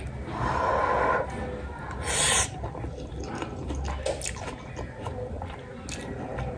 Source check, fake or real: real